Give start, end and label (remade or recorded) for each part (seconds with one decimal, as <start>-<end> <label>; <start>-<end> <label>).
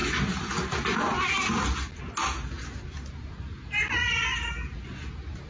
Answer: 0.0-5.5 recorded